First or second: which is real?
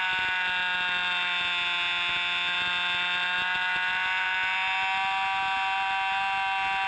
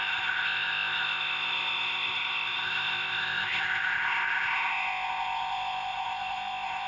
first